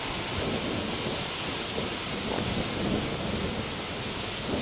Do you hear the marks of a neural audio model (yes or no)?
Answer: no